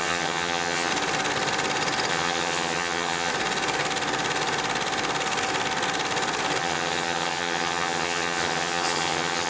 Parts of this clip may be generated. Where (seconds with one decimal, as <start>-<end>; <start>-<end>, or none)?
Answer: 0.0-0.9; 2.1-3.3; 6.6-9.5